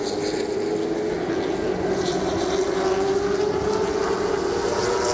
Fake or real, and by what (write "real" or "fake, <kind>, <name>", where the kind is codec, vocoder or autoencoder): real